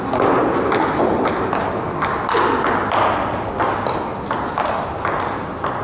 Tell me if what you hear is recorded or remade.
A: recorded